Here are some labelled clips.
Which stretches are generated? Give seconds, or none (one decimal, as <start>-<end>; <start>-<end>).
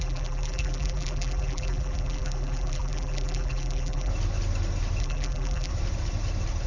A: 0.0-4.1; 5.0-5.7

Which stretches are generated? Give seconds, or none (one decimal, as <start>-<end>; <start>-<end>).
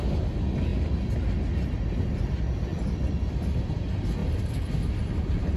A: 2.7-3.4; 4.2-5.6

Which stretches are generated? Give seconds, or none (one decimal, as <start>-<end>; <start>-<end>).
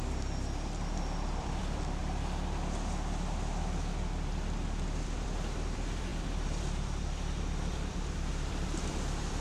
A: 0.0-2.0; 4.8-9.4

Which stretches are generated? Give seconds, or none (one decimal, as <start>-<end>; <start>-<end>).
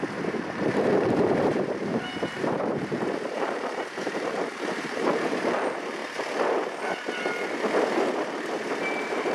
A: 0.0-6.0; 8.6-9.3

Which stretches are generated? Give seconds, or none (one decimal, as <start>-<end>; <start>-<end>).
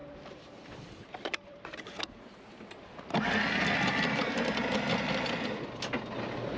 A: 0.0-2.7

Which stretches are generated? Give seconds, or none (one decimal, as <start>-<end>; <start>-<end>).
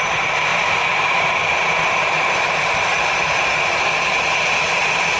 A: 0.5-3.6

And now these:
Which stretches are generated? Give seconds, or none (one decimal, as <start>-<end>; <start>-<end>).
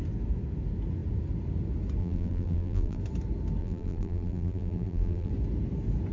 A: 2.0-3.0; 3.6-5.3